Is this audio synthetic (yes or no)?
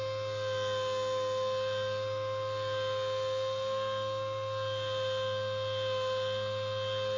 no